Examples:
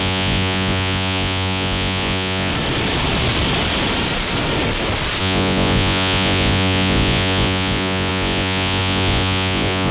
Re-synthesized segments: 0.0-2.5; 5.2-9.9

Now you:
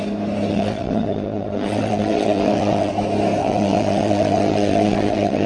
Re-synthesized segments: 0.5-2.9; 3.4-5.5